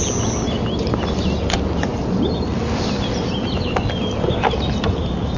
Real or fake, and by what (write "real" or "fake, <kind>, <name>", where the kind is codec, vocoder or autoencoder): real